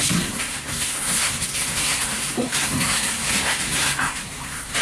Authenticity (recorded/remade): remade